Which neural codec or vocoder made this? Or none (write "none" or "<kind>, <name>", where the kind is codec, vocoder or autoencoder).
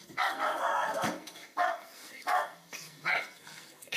codec, SNAC